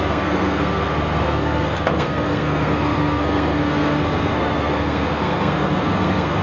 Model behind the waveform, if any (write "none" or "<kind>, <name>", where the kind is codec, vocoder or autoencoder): codec, SNAC